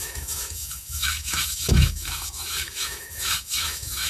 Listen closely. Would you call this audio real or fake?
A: fake